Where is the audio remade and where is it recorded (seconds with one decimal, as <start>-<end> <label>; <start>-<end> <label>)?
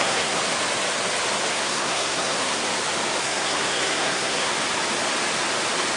0.0-0.4 remade; 0.4-1.5 recorded; 1.5-2.6 remade; 2.6-3.2 recorded; 3.2-4.5 remade; 4.5-6.0 recorded